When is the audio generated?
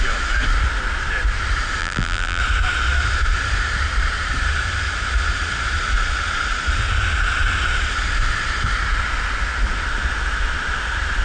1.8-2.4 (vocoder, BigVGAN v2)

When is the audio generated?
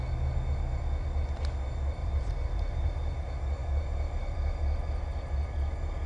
2.0-3.1 (vocoder, BigVGAN v2)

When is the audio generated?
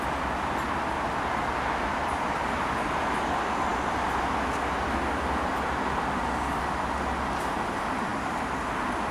none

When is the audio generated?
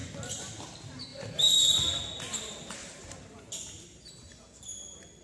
1.1-2.0 (vocoder, BigVGAN v2); 2.8-3.6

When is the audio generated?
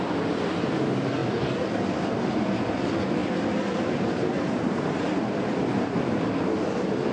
1.2-2.6 (vocoder, BigVGAN v2); 3.2-5.8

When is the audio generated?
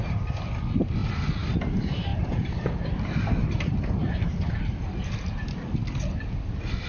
2.1-5.1 (vocoder, BigVGAN v2)